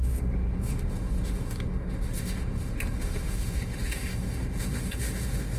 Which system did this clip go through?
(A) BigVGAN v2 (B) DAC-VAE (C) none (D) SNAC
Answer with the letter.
B